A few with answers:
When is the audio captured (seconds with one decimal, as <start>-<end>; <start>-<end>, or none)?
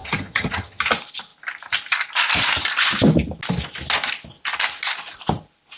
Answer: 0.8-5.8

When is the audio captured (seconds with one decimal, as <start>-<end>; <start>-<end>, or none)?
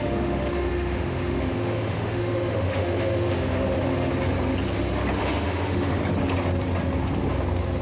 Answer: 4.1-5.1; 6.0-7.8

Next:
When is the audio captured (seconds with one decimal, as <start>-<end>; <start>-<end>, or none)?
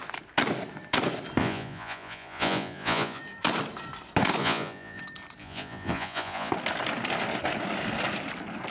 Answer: 0.0-1.4; 3.2-4.4; 5.0-5.4; 6.5-8.7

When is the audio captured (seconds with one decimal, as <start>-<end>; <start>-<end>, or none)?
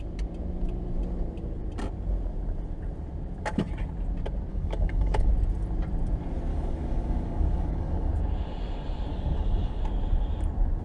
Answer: 0.0-4.5; 5.3-6.5; 8.1-9.1; 9.8-10.8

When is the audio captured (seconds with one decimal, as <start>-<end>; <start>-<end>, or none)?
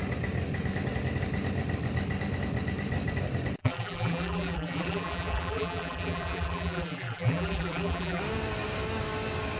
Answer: 0.0-3.6; 8.2-9.6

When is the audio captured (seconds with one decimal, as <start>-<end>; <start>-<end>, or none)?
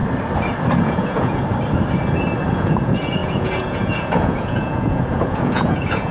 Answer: 0.0-0.8; 1.4-2.5